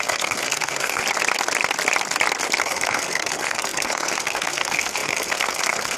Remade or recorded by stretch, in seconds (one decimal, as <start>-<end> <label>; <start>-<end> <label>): 0.0-1.0 remade; 1.0-2.6 recorded; 2.6-6.0 remade